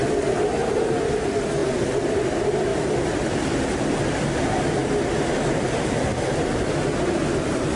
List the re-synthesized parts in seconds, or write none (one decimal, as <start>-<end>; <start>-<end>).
1.6-2.2; 2.7-3.3